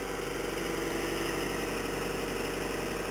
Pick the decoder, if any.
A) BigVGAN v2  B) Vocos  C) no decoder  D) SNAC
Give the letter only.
C